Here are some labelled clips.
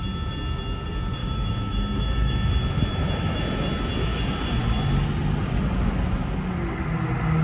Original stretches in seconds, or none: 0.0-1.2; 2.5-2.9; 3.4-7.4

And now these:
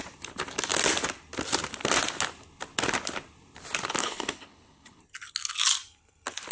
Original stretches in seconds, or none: 0.0-4.0; 5.0-6.5